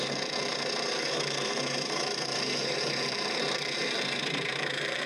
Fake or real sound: fake